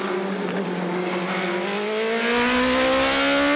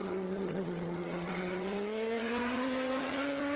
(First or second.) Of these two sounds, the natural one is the first